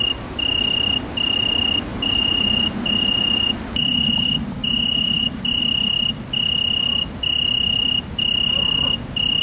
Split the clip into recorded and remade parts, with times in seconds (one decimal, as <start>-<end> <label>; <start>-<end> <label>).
0.0-1.9 recorded; 1.9-5.6 remade; 5.6-9.4 recorded